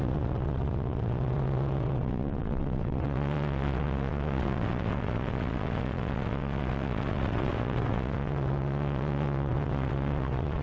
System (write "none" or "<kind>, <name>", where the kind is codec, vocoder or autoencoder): vocoder, WaveNeXt